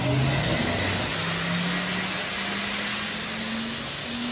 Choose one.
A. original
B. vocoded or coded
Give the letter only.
A